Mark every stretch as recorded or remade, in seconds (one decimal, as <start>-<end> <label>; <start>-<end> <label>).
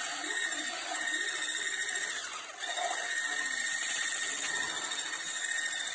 0.0-0.5 recorded; 0.5-1.0 remade; 1.0-5.9 recorded